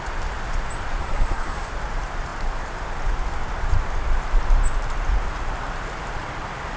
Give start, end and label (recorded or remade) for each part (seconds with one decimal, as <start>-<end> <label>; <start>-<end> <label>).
0.0-1.0 recorded; 1.0-1.7 remade; 1.7-6.8 recorded